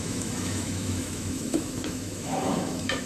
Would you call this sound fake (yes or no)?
yes